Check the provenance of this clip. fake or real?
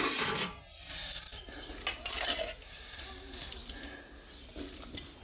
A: real